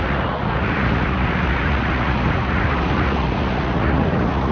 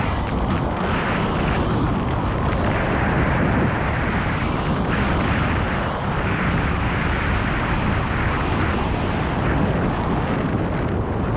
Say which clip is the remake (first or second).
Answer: first